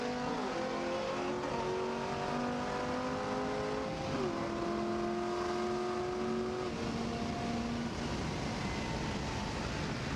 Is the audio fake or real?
real